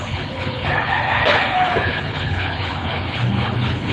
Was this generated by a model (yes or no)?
yes